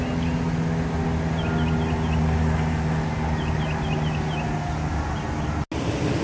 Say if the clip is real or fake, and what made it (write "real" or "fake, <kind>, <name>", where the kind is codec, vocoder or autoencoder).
real